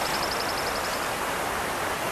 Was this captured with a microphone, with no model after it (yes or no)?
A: yes